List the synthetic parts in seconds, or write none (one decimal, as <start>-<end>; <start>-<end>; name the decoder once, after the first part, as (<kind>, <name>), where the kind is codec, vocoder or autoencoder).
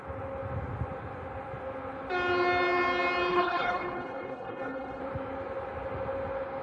3.3-5.0 (codec, HILCodec)